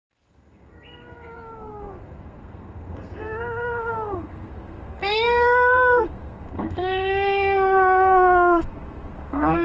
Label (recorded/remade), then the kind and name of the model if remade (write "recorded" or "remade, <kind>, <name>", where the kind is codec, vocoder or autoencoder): remade, codec, SNAC